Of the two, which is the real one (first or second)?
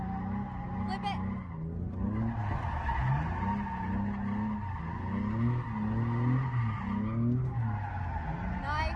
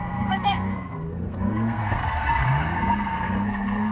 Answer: first